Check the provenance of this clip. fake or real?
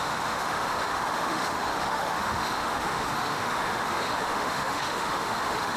fake